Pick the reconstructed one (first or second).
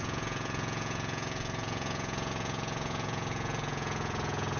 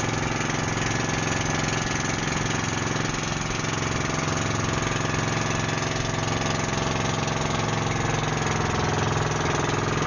first